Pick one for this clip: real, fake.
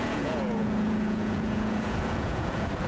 fake